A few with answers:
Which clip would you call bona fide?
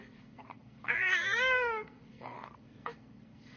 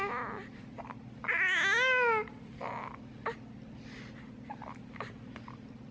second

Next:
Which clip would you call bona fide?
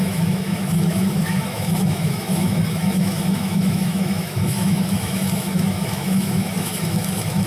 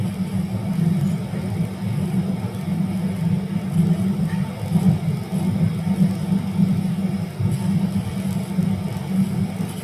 second